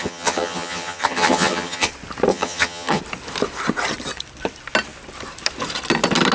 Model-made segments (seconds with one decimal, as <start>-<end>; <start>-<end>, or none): 0.0-1.9; 2.3-3.0